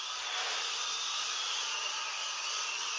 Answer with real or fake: real